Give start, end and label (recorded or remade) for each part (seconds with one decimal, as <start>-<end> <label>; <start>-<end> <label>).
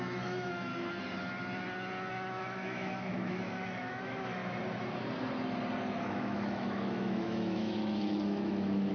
0.0-0.7 remade; 0.7-2.1 recorded; 2.1-4.4 remade; 4.4-6.0 recorded; 6.0-8.9 remade